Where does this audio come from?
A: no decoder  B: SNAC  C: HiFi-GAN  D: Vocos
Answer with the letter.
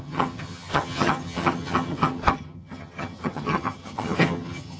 C